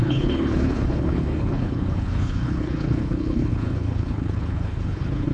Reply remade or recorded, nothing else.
remade